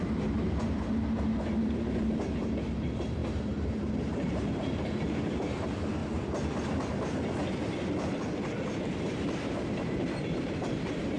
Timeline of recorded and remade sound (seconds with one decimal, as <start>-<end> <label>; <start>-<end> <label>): 0.0-6.0 remade; 6.0-8.8 recorded; 8.8-11.2 remade